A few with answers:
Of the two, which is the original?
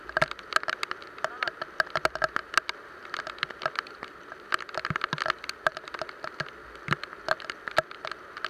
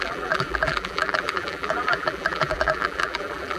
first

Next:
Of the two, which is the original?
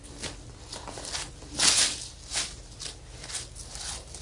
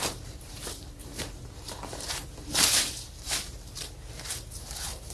first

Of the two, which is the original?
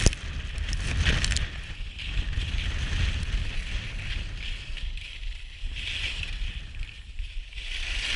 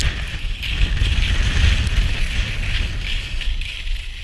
second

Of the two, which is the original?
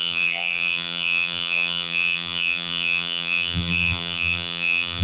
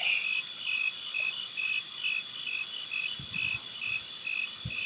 second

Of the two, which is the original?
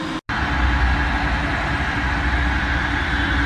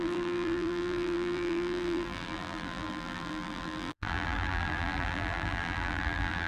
first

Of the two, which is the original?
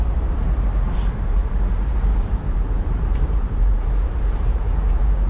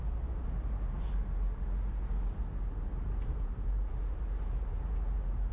second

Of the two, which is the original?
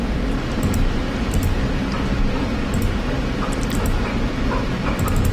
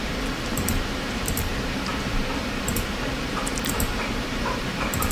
first